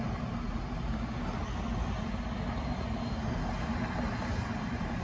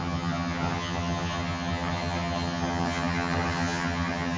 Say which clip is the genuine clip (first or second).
first